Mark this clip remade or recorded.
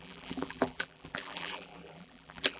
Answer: remade